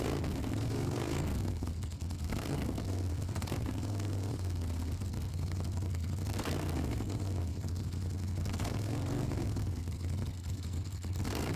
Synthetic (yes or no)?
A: yes